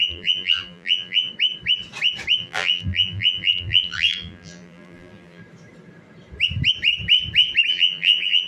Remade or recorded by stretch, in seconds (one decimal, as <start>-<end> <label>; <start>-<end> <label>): 0.0-1.3 remade; 1.3-2.4 recorded; 2.4-5.4 remade; 5.4-7.7 recorded; 7.7-8.5 remade